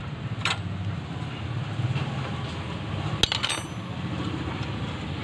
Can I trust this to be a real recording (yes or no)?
yes